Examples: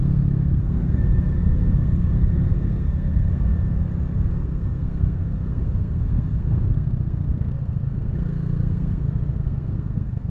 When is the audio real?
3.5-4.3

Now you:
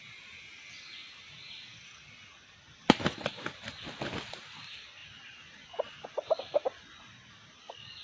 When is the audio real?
0.0-8.0

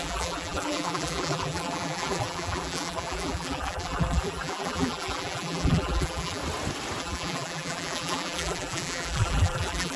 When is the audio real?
6.4-7.0

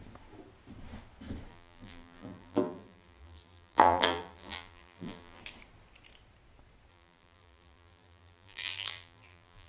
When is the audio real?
0.0-1.5; 5.4-6.9

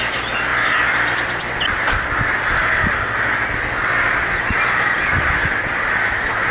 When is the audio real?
0.0-6.5

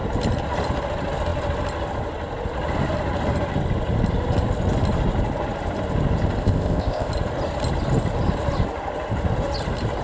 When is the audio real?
0.0-6.4; 7.1-10.0

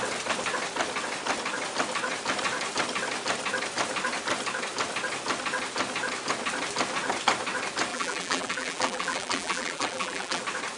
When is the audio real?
0.0-7.9; 10.4-10.8